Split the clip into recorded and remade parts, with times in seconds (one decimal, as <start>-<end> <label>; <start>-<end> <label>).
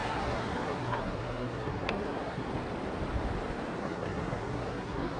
0.0-2.5 remade; 2.5-3.8 recorded; 3.8-5.2 remade